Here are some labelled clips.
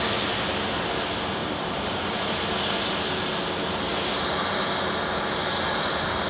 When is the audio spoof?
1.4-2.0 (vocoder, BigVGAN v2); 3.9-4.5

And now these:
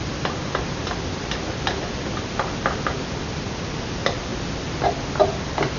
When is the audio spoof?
none

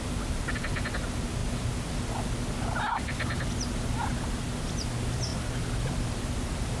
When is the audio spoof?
none